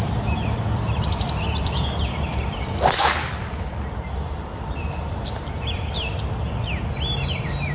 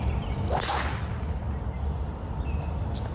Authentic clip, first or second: second